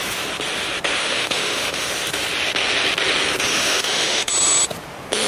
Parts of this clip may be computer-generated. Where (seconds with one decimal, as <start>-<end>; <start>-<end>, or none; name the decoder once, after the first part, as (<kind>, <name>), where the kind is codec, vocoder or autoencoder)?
1.0-1.9 (autoencoder, DAC-VAE); 3.5-4.3